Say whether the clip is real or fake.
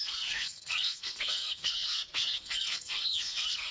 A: fake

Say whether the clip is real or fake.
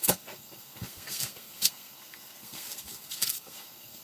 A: fake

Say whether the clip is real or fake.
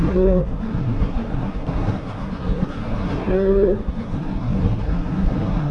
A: fake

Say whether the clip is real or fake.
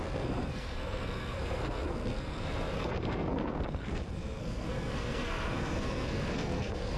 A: fake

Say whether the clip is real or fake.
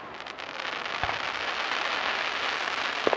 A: real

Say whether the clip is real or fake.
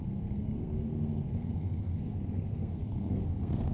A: fake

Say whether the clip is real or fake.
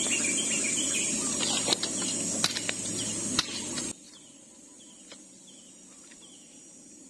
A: real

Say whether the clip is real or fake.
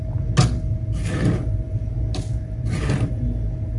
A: real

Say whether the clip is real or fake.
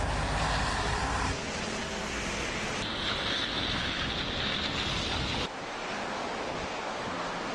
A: real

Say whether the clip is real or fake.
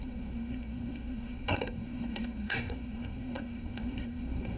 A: fake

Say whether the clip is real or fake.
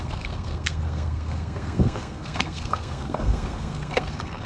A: fake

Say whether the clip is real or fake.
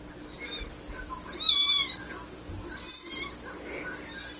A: real